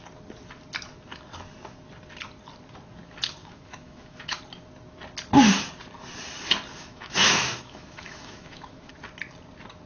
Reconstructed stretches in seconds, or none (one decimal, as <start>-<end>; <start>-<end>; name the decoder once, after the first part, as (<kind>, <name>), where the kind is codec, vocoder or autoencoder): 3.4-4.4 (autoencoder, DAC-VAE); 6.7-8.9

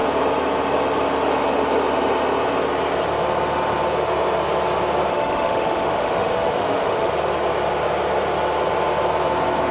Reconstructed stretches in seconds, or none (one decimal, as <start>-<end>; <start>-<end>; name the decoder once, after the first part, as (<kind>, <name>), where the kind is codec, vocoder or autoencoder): 5.1-7.1 (autoencoder, DAC-VAE)

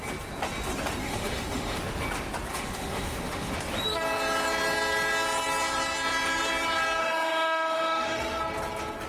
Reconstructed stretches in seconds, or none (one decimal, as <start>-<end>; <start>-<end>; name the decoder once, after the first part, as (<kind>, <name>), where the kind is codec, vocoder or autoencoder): 1.0-1.8 (autoencoder, DAC-VAE); 2.5-3.5; 7.0-8.4